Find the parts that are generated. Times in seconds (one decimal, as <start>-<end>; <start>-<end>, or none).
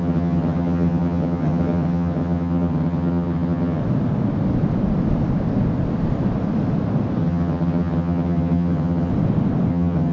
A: 0.0-3.8; 7.2-9.1; 9.7-10.1